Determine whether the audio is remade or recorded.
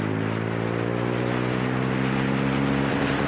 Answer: recorded